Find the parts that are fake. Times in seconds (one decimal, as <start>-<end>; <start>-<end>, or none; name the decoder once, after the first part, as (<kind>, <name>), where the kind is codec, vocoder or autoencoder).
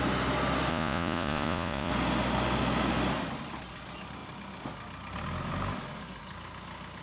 0.7-1.9 (vocoder, Vocos)